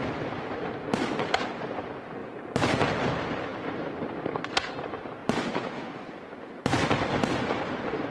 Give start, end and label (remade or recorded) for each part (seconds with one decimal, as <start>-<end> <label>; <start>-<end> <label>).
0.0-5.2 recorded; 5.2-6.1 remade; 6.1-8.1 recorded